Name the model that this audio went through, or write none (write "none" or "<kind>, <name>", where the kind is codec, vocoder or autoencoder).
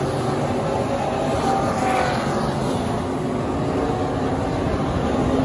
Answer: none